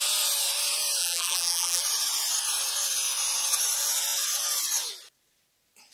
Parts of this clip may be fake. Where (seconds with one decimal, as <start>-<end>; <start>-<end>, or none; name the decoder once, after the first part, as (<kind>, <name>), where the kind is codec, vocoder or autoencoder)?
1.0-1.8 (vocoder, BigVGAN v2)